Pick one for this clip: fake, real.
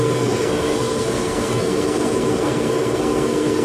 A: fake